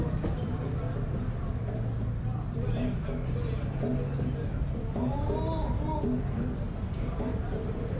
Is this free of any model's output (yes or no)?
yes